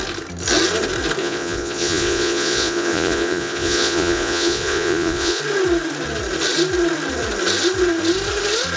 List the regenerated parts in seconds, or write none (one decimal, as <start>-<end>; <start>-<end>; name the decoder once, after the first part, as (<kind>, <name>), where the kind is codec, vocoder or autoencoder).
1.2-5.4 (vocoder, Vocos)

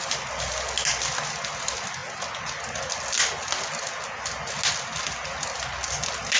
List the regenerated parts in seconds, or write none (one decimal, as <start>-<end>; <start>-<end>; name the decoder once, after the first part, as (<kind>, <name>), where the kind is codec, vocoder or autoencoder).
none

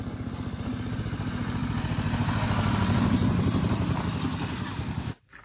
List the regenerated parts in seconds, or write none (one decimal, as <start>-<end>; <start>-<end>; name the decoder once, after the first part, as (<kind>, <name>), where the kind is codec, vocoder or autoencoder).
none

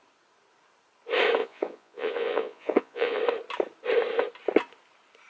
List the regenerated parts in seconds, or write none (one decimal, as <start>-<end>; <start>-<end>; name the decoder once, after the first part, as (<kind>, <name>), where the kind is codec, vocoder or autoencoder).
1.4-3.2 (vocoder, Vocos)